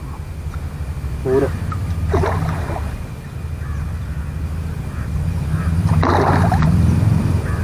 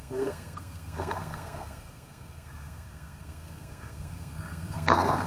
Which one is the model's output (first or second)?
second